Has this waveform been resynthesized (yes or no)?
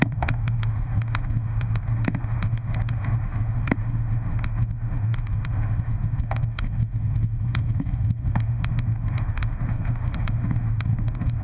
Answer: yes